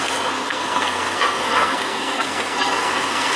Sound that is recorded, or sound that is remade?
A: remade